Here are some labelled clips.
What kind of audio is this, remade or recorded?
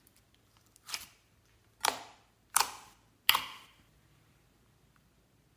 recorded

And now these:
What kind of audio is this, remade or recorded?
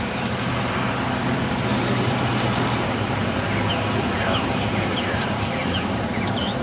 remade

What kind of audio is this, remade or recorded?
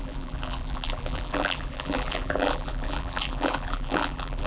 remade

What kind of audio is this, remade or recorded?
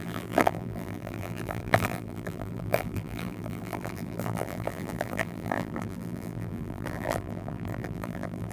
remade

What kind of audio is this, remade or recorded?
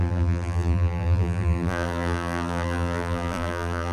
remade